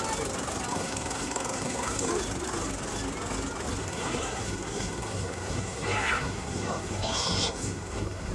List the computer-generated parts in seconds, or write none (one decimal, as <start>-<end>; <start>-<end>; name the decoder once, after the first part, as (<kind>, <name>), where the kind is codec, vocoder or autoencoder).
0.7-2.1 (codec, SNAC); 3.8-8.3